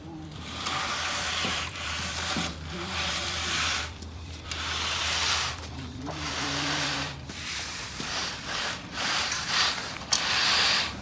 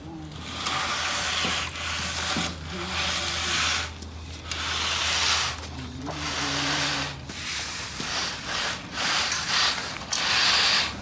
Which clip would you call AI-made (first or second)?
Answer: first